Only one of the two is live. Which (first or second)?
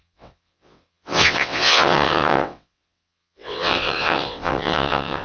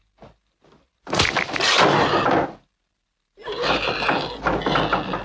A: second